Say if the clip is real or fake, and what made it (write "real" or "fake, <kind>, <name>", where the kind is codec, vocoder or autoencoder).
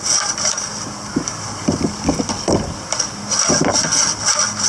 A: real